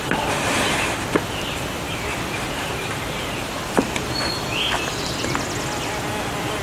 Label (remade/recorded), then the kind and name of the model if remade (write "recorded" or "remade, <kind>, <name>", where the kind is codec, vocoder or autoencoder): recorded